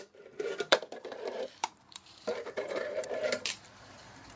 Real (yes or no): no